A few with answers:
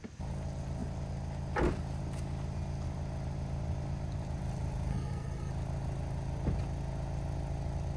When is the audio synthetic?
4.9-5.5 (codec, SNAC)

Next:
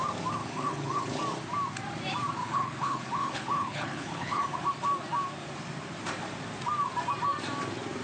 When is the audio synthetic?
0.4-1.2 (codec, HILCodec); 2.4-4.4

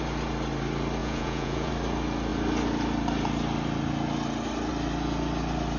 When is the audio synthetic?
1.0-1.7 (vocoder, Vocos)